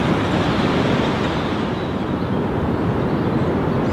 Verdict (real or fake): real